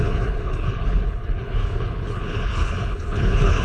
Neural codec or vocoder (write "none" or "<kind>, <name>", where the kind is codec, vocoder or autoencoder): codec, HILCodec